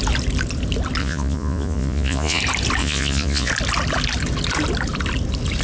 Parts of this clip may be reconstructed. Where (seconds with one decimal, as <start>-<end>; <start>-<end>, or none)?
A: 1.0-2.4; 2.8-3.5